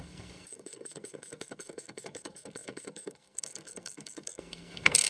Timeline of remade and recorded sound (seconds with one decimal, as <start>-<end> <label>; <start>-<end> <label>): 0.0-5.1 remade